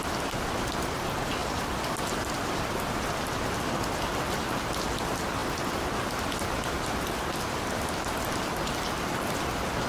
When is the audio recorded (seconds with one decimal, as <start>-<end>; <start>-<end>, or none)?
0.0-1.4; 3.5-5.4; 7.9-9.9